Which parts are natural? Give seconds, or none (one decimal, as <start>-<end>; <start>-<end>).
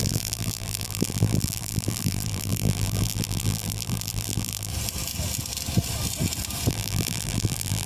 4.7-6.7